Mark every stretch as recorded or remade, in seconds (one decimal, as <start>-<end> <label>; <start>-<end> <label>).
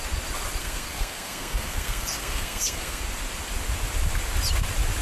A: 0.0-0.6 recorded; 0.6-3.0 remade; 3.0-5.0 recorded